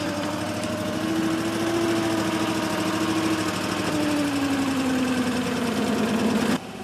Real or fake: real